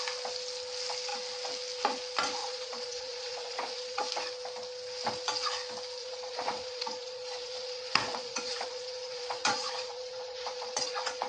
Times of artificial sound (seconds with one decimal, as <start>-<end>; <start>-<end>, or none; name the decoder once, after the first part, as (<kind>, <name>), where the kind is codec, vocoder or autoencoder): 2.4-4.0 (vocoder, Vocos); 6.0-11.3